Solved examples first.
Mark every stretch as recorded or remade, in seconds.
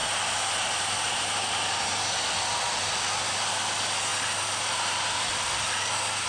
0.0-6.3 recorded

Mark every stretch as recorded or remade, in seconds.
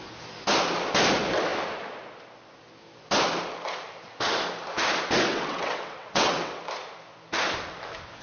0.0-5.3 recorded; 5.3-6.6 remade; 6.6-8.2 recorded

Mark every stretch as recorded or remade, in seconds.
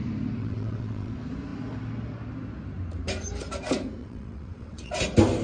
0.0-0.4 recorded; 0.4-1.1 remade; 1.1-4.0 recorded; 4.0-4.9 remade; 4.9-5.4 recorded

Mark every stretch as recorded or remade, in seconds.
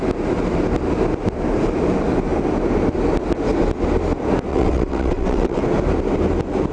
0.0-4.5 recorded; 4.5-5.6 remade; 5.6-6.7 recorded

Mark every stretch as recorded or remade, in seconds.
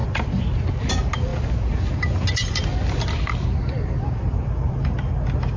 0.0-5.6 recorded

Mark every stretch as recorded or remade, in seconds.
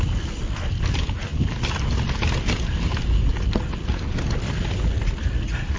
0.0-5.8 recorded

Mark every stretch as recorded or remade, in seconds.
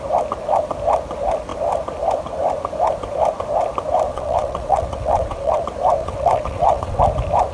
0.0-4.1 recorded; 4.1-5.6 remade; 5.6-6.0 recorded; 6.0-7.0 remade; 7.0-7.5 recorded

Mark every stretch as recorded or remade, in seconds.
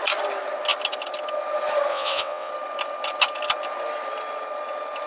0.0-1.9 recorded; 1.9-2.5 remade; 2.5-5.1 recorded